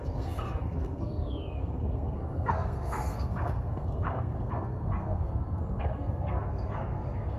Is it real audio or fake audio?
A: fake